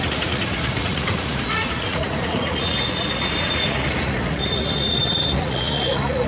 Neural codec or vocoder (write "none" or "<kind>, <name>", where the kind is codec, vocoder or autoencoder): vocoder, Vocos